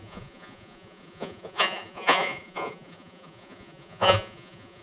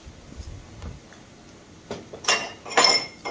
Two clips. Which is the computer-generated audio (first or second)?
first